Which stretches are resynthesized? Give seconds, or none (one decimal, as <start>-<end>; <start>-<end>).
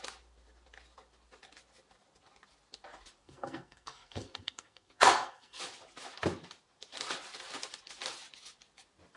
3.2-5.6